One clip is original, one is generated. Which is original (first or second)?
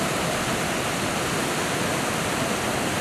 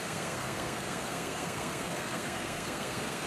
first